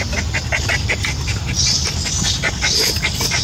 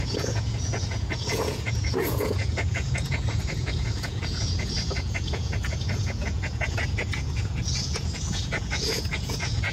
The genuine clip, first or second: first